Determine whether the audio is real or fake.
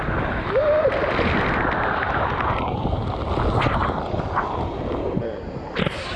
real